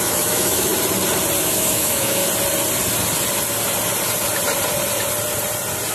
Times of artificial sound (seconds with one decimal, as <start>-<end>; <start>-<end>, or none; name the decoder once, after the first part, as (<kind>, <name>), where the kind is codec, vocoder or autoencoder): 0.0-0.7 (autoencoder, DAC-VAE); 1.4-2.2